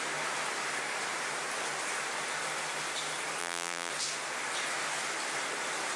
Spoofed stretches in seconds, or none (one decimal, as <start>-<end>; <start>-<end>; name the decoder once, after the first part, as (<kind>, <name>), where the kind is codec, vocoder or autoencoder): 3.4-3.9 (vocoder, BigVGAN v2)